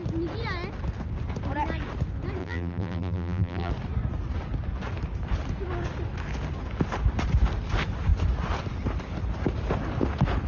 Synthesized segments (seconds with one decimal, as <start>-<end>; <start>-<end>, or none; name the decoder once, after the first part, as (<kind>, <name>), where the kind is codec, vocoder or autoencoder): 2.4-3.7 (vocoder, BigVGAN v2)